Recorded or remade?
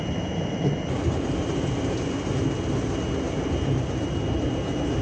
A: recorded